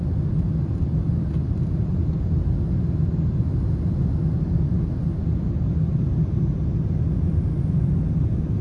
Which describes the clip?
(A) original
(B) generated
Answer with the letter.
A